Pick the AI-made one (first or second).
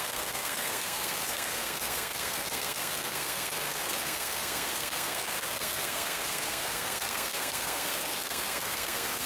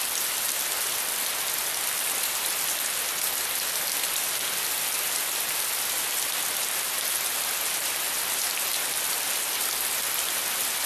first